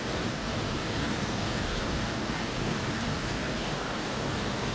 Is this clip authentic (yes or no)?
no